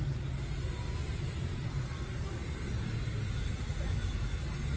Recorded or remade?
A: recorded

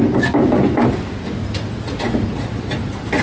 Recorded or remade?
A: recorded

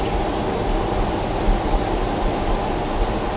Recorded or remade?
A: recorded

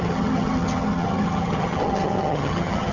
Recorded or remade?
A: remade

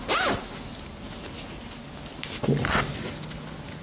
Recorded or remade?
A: recorded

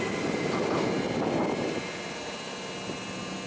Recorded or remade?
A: recorded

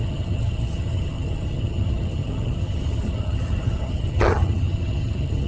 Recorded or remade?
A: remade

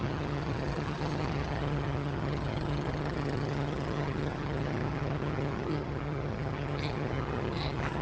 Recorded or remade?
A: remade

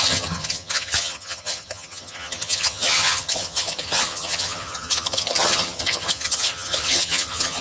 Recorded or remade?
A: remade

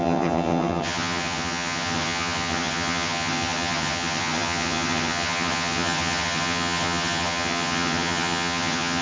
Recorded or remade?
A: remade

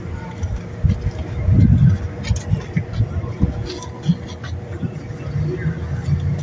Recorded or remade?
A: recorded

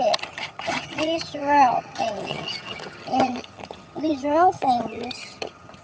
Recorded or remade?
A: remade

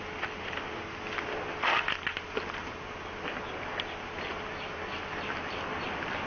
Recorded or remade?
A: recorded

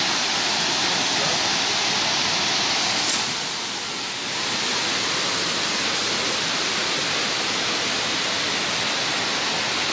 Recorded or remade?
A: recorded